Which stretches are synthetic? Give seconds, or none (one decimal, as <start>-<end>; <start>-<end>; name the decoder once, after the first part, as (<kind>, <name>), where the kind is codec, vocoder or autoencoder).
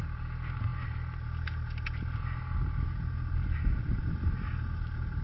none